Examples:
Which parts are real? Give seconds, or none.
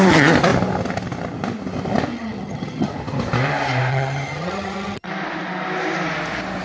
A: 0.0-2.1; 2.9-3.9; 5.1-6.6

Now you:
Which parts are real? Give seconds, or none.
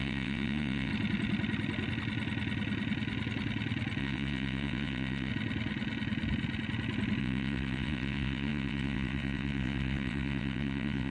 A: 0.9-4.0; 5.3-7.2